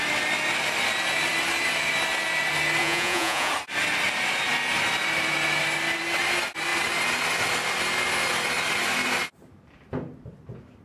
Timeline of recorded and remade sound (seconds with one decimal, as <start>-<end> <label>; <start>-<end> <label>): 0.0-2.8 recorded; 2.8-3.5 remade; 3.5-10.8 recorded